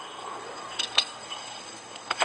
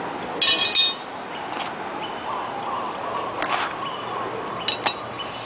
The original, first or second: second